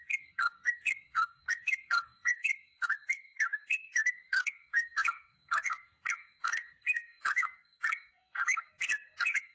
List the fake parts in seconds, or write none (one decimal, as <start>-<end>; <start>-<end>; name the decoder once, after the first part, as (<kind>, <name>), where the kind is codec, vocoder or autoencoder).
0.0-9.5 (codec, SNAC)